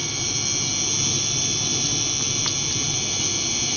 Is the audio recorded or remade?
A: recorded